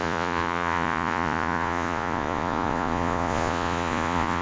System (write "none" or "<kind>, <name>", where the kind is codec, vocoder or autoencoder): vocoder, Vocos